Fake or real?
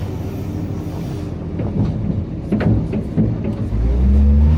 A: real